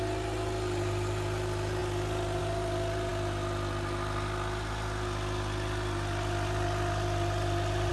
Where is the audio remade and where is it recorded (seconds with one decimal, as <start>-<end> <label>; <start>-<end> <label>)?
0.0-7.9 recorded